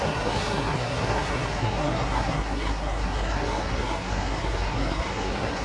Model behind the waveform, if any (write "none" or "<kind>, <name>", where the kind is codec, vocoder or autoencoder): codec, SNAC